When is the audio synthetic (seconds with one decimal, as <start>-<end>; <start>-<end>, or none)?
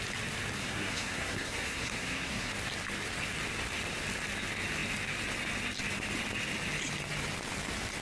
0.6-2.5